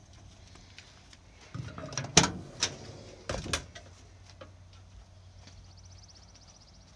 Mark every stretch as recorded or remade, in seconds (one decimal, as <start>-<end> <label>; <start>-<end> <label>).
0.0-0.6 remade; 0.6-7.0 recorded